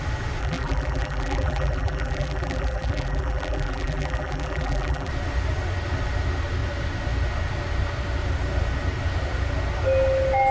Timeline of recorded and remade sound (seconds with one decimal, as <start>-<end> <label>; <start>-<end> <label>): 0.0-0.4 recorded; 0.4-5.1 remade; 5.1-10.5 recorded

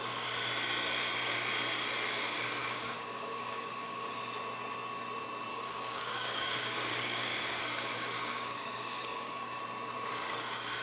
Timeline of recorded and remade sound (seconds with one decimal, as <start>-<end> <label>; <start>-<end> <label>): 0.0-2.6 recorded; 2.6-4.2 remade; 4.2-5.5 recorded; 5.5-9.6 remade; 9.6-10.8 recorded

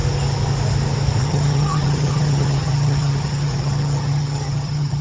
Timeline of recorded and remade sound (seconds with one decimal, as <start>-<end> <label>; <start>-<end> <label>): 0.0-1.2 recorded; 1.2-5.0 remade

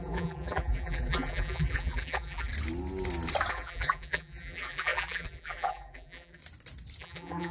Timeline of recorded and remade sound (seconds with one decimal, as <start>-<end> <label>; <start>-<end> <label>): 0.0-2.5 remade; 2.5-3.5 recorded; 3.5-6.4 remade; 6.4-7.0 recorded; 7.0-7.5 remade

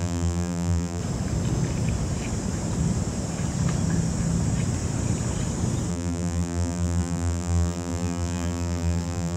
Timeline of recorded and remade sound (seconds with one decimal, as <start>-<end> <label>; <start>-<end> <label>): 0.0-1.0 remade; 1.0-5.9 recorded; 5.9-9.4 remade

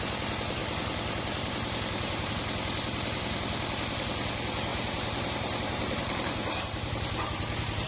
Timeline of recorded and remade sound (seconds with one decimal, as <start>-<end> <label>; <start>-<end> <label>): 0.0-0.6 recorded; 0.6-2.3 remade; 2.3-4.7 recorded; 4.7-7.9 remade

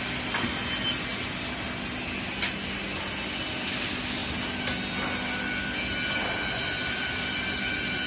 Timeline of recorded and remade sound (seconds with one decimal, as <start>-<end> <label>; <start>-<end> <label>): 0.0-8.1 recorded